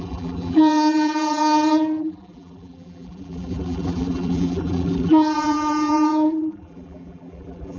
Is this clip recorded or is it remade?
remade